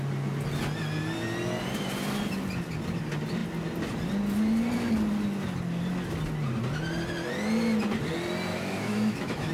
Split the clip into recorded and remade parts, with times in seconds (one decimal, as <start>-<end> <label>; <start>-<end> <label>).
0.0-8.5 recorded; 8.5-9.5 remade